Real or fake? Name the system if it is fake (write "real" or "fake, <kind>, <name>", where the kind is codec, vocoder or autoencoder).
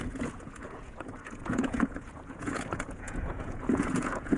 fake, vocoder, Vocos